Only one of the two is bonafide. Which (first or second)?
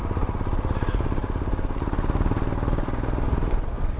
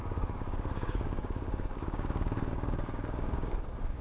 first